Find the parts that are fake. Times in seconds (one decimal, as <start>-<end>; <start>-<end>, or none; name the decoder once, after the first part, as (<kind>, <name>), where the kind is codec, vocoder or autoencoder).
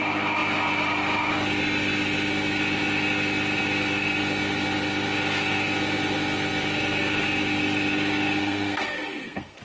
8.4-9.6 (codec, SNAC)